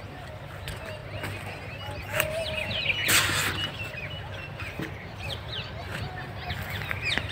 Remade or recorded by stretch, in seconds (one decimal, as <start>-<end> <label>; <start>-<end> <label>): 0.0-7.3 recorded